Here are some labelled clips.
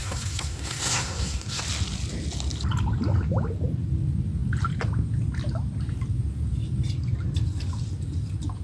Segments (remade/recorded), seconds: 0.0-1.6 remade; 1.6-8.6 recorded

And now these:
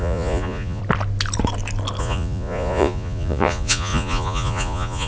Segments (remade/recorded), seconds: 0.0-0.8 remade; 0.8-2.0 recorded; 2.0-5.1 remade

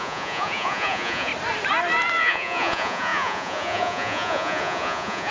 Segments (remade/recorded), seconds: 0.0-1.3 remade; 1.3-2.2 recorded; 2.2-5.3 remade